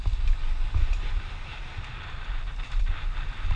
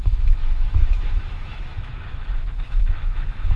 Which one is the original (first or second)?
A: first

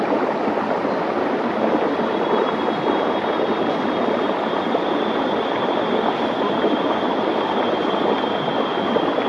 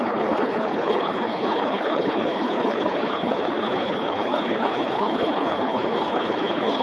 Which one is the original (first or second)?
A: first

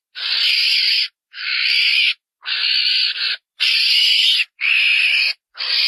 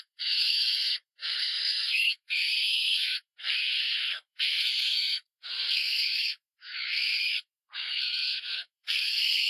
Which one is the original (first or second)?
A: first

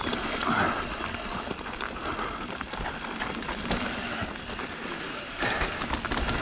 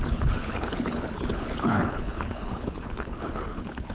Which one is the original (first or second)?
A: first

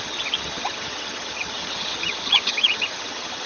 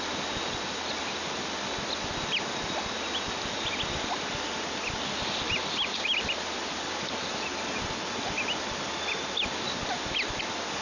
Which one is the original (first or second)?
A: second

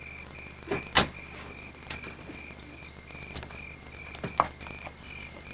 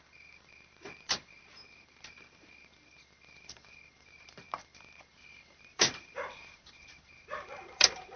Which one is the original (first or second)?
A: first